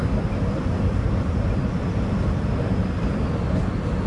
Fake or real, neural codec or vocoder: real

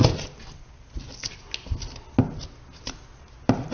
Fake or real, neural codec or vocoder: real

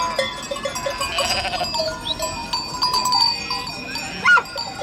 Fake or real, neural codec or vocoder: real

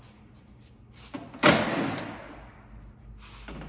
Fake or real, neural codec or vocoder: real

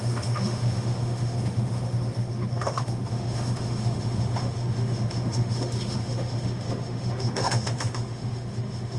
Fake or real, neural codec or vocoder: fake, autoencoder, DAC-VAE